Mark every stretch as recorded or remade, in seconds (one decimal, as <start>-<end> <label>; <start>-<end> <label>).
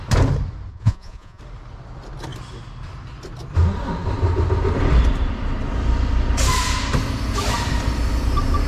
0.0-0.7 recorded; 0.7-1.4 remade; 1.4-8.7 recorded